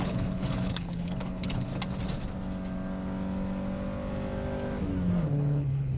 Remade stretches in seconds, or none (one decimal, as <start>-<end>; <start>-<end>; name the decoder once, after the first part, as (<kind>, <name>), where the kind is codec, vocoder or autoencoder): 0.0-1.7 (codec, HILCodec); 5.3-6.0